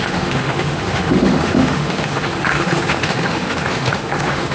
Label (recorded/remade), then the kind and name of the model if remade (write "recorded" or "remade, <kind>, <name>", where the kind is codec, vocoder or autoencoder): remade, autoencoder, DAC-VAE